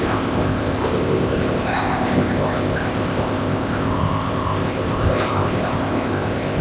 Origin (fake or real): fake